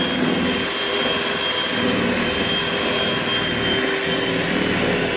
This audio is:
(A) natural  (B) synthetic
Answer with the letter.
A